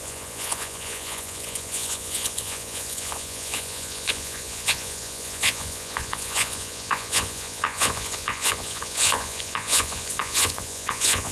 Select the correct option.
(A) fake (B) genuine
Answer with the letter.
A